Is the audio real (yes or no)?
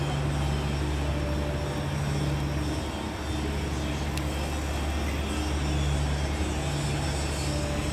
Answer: yes